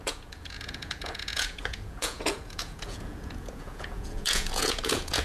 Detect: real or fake fake